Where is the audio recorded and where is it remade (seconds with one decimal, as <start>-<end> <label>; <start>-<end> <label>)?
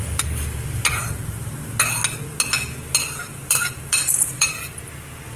0.0-3.3 recorded; 3.3-4.5 remade; 4.5-5.4 recorded